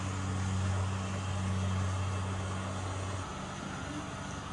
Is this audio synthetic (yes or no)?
no